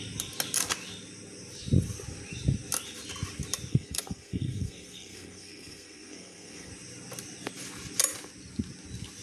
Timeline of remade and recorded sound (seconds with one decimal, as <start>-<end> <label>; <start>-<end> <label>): 0.0-3.7 recorded; 3.7-6.7 remade; 6.7-9.2 recorded